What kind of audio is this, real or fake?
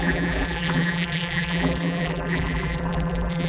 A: fake